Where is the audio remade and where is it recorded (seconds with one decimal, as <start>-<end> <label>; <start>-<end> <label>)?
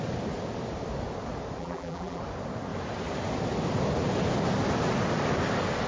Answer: 0.0-1.6 recorded; 1.6-2.2 remade; 2.2-5.9 recorded